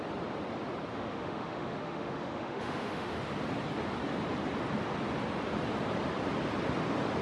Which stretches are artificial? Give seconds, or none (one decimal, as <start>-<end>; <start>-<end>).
0.9-3.2